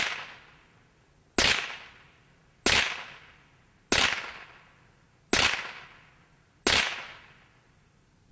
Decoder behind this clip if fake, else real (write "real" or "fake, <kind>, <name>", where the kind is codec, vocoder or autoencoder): real